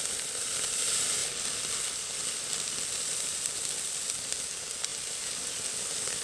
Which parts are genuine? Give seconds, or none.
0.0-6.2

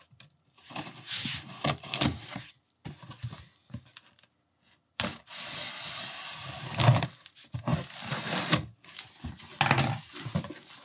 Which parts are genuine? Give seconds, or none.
0.0-10.8